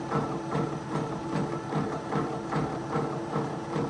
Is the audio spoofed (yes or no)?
yes